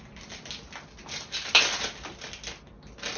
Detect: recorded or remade recorded